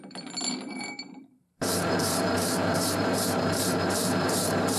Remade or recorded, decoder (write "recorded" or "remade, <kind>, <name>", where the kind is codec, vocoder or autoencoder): remade, vocoder, BigVGAN v2